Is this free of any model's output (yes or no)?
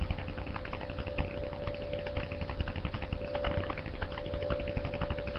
yes